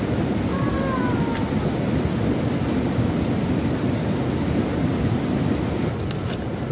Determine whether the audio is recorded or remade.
recorded